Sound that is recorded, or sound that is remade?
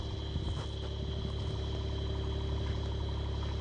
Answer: recorded